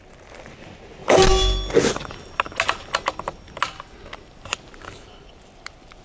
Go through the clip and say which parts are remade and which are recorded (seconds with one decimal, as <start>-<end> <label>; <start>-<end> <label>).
0.0-6.0 recorded